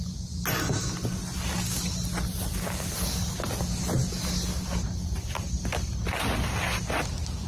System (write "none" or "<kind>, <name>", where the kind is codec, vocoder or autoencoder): none